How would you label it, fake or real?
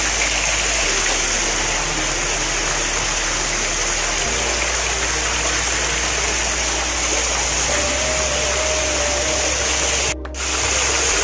real